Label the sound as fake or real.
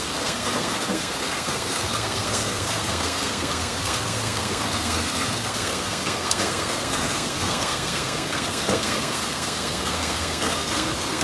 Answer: fake